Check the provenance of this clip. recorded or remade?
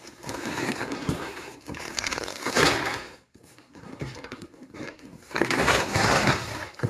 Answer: remade